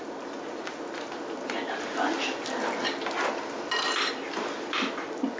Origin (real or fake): real